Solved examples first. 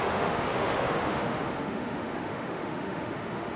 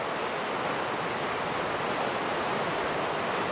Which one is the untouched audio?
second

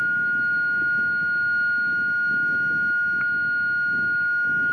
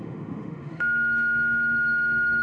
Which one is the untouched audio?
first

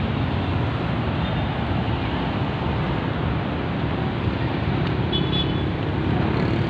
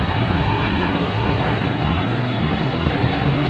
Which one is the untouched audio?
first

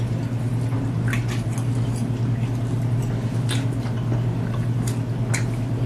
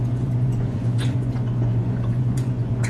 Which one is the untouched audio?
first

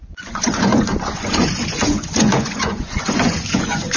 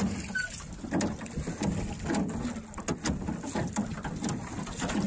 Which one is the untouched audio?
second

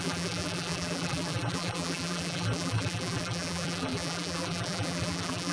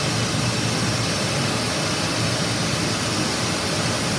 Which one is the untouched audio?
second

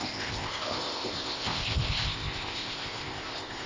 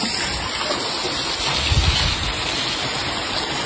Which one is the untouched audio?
second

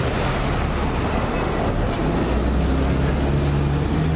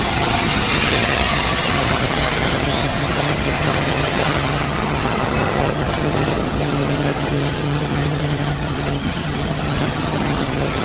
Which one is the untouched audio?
first